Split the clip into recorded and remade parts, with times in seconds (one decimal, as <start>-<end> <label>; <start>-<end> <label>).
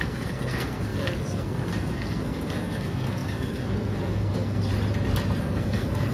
0.0-4.7 remade; 4.7-5.4 recorded; 5.4-6.1 remade